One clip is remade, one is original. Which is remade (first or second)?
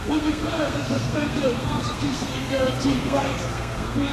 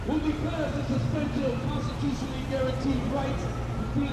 first